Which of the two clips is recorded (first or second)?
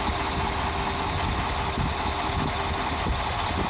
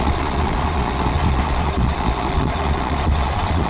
first